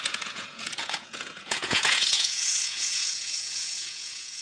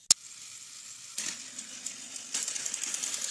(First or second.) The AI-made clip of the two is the first